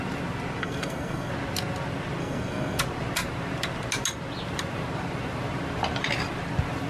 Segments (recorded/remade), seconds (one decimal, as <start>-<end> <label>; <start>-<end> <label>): 0.0-0.6 recorded; 0.6-1.3 remade; 1.3-2.2 recorded; 2.2-2.8 remade; 2.8-6.9 recorded